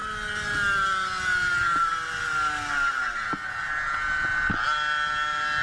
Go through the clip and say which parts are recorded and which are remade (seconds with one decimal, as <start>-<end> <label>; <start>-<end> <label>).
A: 0.0-5.6 recorded